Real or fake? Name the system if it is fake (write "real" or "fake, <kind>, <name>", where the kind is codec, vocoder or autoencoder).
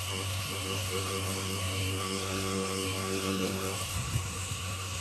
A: fake, codec, SNAC